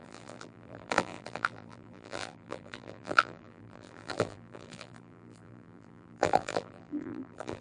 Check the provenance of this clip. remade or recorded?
remade